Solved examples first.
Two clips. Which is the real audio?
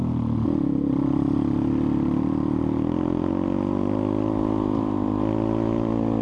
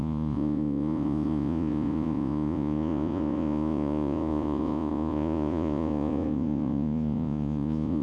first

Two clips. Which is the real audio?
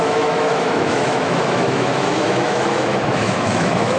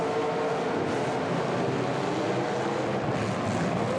second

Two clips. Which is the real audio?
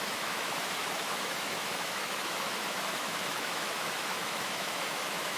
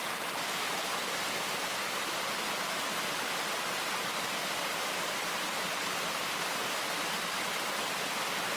second